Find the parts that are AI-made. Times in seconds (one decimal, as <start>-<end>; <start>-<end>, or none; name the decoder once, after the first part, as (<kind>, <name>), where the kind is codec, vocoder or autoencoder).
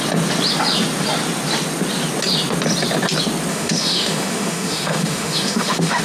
3.5-6.0 (autoencoder, DAC-VAE)